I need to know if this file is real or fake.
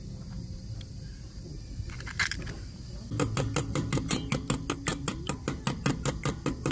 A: real